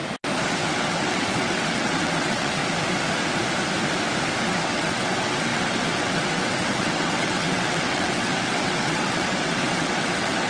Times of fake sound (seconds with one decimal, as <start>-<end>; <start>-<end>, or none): 0.5-2.6; 4.4-10.5